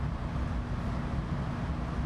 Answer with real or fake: real